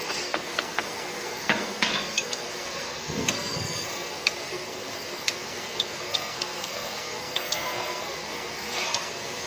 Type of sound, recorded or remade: remade